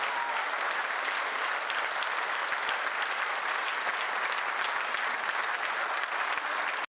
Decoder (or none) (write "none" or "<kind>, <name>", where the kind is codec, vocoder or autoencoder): none